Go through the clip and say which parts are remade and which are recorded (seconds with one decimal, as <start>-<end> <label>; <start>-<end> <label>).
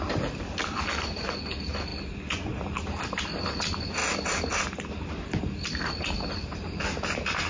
0.0-7.5 recorded